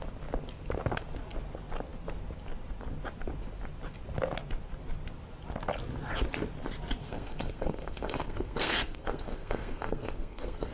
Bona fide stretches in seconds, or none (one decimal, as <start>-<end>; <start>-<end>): 0.0-7.0